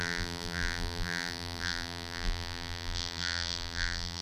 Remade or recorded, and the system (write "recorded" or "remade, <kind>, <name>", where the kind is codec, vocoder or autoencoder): remade, vocoder, BigVGAN v2